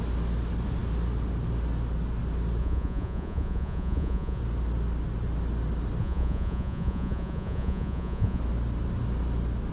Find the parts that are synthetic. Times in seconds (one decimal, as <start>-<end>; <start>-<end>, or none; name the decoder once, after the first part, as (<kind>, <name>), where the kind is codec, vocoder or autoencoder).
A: 2.6-4.4 (vocoder, Vocos); 6.0-8.4